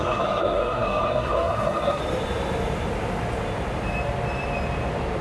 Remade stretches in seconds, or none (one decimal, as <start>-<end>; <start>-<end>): 0.0-2.0